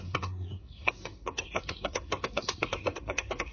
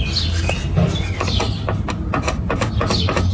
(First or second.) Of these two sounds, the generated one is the first